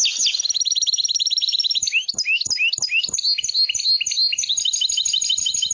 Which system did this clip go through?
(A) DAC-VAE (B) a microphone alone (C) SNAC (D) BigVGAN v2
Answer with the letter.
B